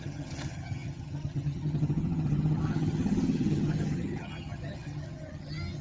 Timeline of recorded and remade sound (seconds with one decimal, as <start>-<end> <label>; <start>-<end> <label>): 0.0-5.8 remade